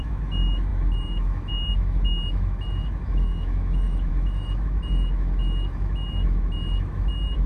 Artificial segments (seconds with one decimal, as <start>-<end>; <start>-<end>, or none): 0.0-7.5